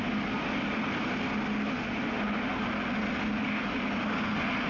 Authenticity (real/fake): real